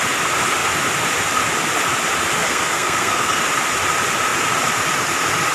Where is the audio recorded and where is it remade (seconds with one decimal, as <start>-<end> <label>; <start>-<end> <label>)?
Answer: 0.0-2.4 recorded; 2.4-3.4 remade; 3.4-5.5 recorded